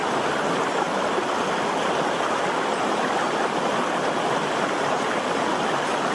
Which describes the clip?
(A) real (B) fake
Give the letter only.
A